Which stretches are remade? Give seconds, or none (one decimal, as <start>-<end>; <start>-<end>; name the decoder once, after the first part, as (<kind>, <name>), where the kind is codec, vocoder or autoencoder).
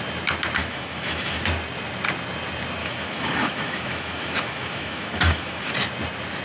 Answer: 0.6-1.4 (autoencoder, DAC-VAE); 2.8-5.7